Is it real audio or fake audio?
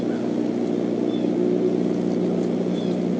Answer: real